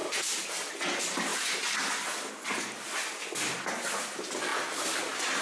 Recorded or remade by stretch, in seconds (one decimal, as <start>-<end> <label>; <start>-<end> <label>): 0.0-5.4 recorded